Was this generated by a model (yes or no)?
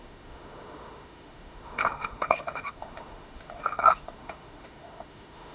yes